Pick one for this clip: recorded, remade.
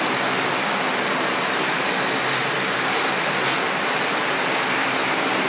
remade